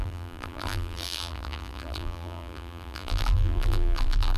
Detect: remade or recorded remade